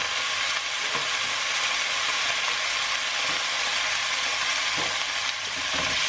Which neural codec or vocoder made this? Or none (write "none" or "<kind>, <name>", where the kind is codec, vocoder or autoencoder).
none